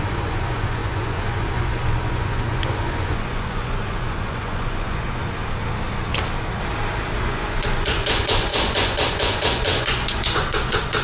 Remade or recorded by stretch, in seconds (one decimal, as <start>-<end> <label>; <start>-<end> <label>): 0.0-5.2 remade; 5.2-7.2 recorded; 7.2-11.0 remade

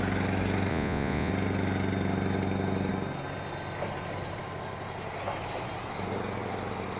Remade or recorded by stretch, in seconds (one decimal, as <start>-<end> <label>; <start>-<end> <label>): 0.0-0.7 recorded; 0.7-1.3 remade; 1.3-7.0 recorded

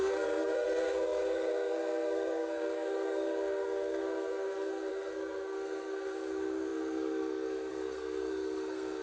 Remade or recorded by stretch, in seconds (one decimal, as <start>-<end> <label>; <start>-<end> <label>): 0.0-9.0 remade

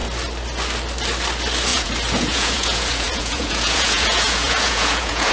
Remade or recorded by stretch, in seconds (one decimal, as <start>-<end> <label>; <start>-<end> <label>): 0.0-1.7 recorded; 1.7-5.3 remade

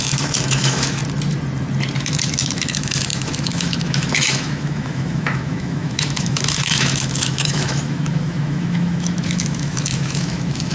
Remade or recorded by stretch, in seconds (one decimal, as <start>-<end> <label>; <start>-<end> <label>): 0.0-1.0 remade; 1.0-2.0 recorded; 2.0-10.7 remade

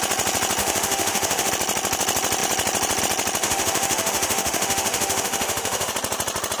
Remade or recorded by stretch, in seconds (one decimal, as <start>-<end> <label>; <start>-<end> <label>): 0.0-0.6 recorded; 0.6-1.5 remade; 1.5-3.4 recorded; 3.4-5.9 remade; 5.9-6.6 recorded